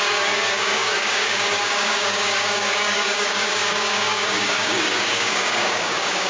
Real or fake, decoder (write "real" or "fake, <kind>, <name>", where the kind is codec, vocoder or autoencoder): fake, codec, DAC